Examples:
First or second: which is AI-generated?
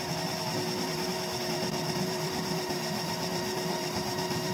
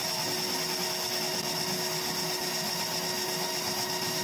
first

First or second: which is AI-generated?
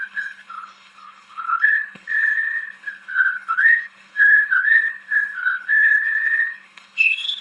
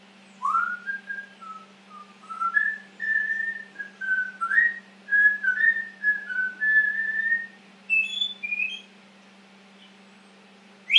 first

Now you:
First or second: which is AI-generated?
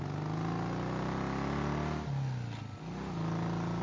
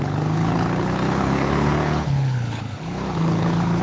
second